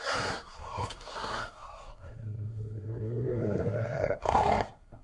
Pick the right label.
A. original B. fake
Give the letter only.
B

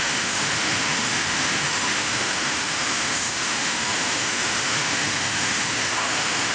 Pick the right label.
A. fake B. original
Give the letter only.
A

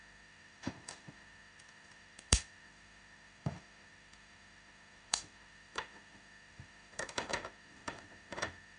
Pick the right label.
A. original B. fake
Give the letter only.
B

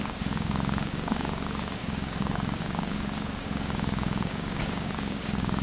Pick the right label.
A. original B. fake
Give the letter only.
B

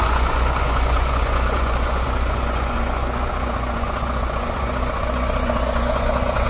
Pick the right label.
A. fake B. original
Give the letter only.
A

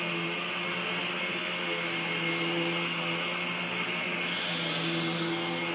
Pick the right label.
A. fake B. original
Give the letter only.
B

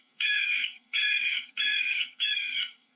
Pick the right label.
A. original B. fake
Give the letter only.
B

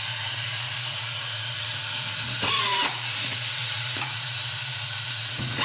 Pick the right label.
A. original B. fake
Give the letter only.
B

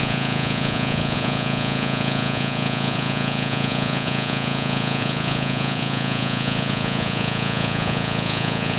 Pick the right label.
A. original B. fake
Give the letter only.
B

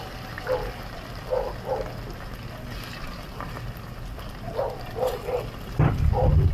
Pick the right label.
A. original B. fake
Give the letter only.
A